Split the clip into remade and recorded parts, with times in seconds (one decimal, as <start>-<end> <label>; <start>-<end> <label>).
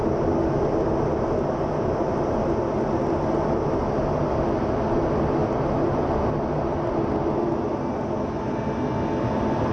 0.0-9.7 recorded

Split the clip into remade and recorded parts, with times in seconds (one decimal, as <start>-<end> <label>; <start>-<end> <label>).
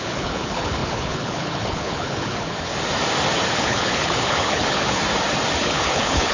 0.0-2.7 remade; 2.7-3.5 recorded; 3.5-5.0 remade; 5.0-5.6 recorded; 5.6-6.3 remade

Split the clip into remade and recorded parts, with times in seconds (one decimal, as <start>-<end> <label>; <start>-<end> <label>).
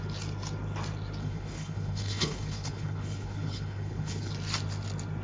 0.0-1.2 recorded; 1.2-4.3 remade; 4.3-5.2 recorded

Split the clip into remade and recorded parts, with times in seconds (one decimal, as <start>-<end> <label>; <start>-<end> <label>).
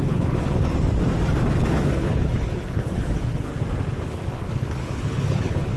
0.0-0.7 remade; 0.7-1.7 recorded; 1.7-3.5 remade; 3.5-4.0 recorded; 4.0-5.8 remade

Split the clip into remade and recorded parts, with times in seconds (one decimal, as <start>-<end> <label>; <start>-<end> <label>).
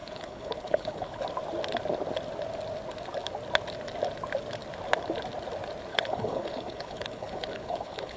0.0-1.2 remade; 1.2-5.9 recorded; 5.9-8.2 remade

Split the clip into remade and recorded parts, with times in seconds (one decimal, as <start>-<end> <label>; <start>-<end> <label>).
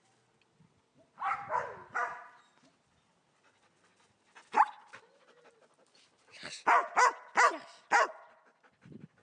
0.0-9.2 recorded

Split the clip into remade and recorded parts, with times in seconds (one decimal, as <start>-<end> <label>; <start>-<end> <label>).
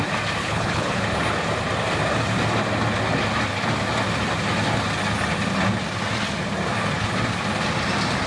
0.0-0.4 recorded; 0.4-1.0 remade; 1.0-8.3 recorded